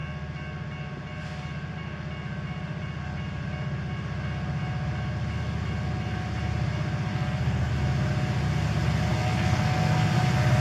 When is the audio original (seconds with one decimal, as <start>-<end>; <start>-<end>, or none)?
0.0-7.1; 7.7-9.1; 10.1-10.6

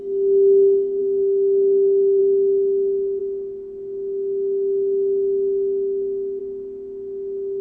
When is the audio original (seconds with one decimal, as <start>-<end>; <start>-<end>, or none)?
0.0-1.0; 2.2-7.6

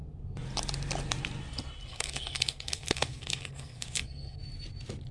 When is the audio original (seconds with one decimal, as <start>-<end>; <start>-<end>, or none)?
0.0-1.9; 4.4-5.1

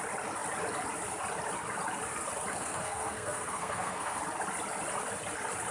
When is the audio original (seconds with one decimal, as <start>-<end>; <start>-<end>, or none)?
0.0-2.5; 4.2-5.7